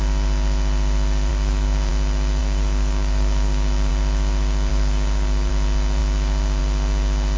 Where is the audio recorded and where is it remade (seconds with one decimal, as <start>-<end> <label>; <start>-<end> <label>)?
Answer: 0.0-1.3 recorded; 1.3-1.9 remade; 1.9-2.4 recorded; 2.4-3.9 remade; 3.9-4.7 recorded; 4.7-5.5 remade; 5.5-7.4 recorded